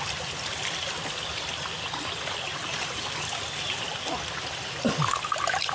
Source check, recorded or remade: recorded